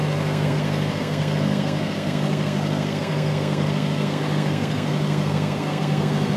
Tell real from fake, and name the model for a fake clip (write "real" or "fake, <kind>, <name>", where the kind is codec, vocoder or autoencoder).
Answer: fake, codec, SNAC